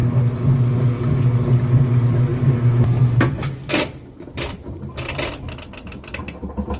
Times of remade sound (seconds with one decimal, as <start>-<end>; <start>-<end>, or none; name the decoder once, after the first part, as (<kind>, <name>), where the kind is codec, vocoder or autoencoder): 2.3-5.4 (vocoder, BigVGAN v2)